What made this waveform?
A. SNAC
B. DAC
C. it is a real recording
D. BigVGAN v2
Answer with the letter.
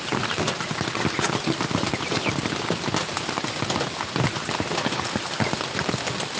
C